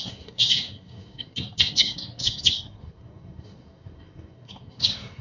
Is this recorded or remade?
remade